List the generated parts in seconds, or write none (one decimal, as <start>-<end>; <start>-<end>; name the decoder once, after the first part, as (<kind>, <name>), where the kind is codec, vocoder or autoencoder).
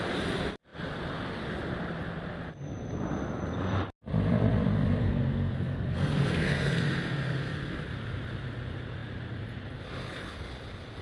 5.0-7.8 (codec, SNAC)